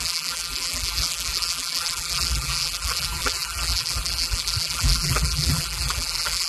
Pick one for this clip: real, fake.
fake